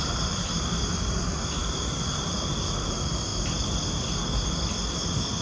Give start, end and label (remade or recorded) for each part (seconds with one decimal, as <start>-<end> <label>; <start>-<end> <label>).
0.0-3.3 remade; 3.3-5.4 recorded